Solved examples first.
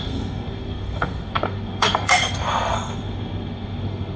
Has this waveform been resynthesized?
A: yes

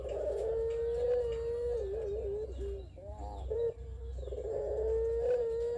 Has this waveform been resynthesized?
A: no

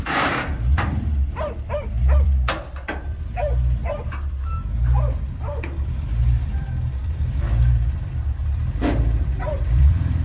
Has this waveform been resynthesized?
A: yes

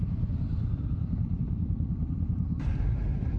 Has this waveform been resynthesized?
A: yes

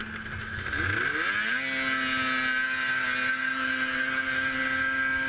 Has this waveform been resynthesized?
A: no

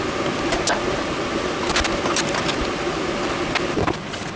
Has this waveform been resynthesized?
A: no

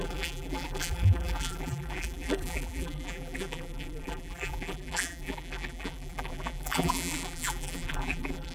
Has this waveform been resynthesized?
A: yes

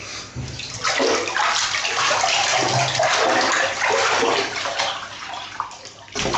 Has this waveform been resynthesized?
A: no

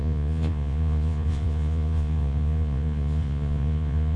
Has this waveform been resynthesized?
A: yes